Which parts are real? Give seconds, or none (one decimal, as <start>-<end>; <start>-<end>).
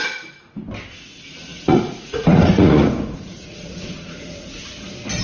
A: 0.0-1.5; 4.6-5.2